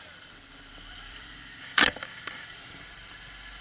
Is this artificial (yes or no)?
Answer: yes